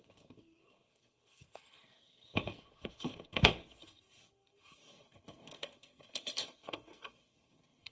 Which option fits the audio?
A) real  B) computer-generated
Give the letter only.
B